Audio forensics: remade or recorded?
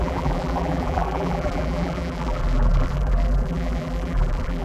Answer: remade